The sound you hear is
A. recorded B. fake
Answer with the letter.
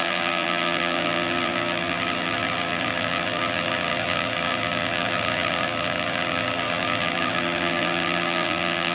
B